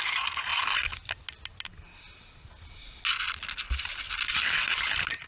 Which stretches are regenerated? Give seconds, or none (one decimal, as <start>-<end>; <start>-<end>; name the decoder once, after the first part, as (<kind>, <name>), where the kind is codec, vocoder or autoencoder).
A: none